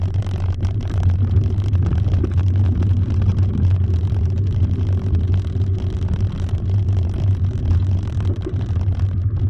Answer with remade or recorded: recorded